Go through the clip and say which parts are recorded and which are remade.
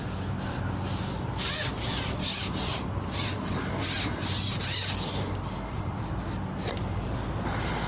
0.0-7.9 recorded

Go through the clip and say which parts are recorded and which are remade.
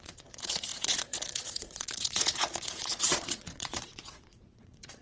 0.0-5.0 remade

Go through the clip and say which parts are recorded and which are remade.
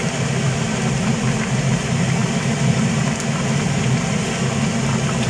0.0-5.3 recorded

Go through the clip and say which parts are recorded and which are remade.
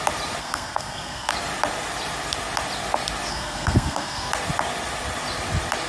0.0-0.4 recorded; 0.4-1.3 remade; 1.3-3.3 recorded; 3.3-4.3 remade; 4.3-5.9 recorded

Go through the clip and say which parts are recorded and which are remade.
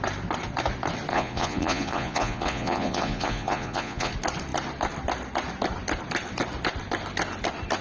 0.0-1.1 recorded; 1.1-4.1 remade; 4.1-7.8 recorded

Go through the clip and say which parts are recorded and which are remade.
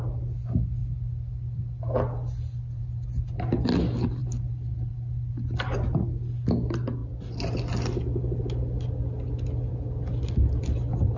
0.0-11.2 recorded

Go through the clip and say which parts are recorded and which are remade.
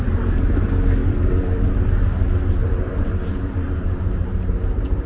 0.0-1.0 recorded; 1.0-1.9 remade; 1.9-2.6 recorded; 2.6-5.1 remade